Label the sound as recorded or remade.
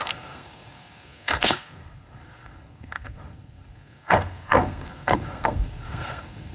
remade